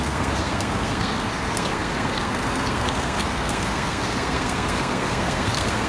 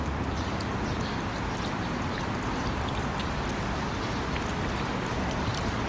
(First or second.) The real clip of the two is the second